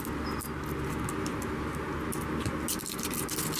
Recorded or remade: recorded